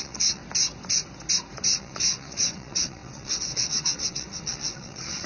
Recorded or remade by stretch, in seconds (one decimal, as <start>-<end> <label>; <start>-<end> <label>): 0.0-0.4 remade; 0.4-1.8 recorded; 1.8-5.3 remade